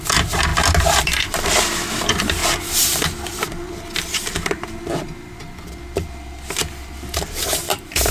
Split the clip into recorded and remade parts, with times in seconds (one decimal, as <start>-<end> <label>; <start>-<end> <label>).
0.0-0.5 remade; 0.5-1.0 recorded; 1.0-5.4 remade; 5.4-6.7 recorded; 6.7-8.1 remade